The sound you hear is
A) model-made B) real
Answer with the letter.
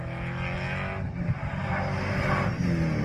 B